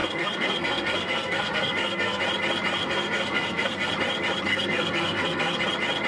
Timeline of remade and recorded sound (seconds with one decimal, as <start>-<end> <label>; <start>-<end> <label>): 0.0-2.2 remade; 2.2-2.8 recorded; 2.8-3.9 remade; 3.9-4.5 recorded; 4.5-5.6 remade; 5.6-6.1 recorded